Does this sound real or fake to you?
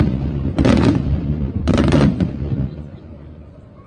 fake